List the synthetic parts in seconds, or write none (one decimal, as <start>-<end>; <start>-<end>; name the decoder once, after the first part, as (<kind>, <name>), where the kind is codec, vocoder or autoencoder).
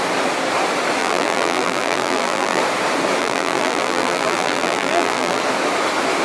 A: 1.0-2.6 (vocoder, BigVGAN v2); 3.2-5.4